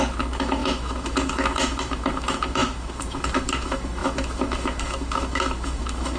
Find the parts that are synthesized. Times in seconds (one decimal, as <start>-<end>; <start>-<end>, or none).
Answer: 0.0-6.2